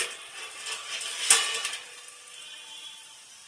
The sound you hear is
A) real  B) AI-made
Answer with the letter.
A